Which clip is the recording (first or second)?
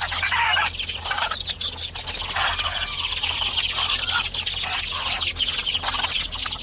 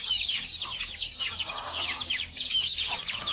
first